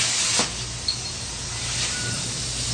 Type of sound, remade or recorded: recorded